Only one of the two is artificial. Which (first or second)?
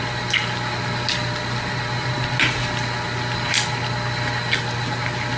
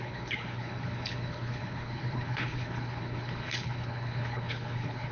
second